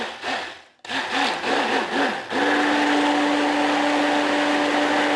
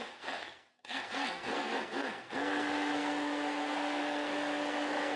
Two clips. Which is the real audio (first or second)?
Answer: first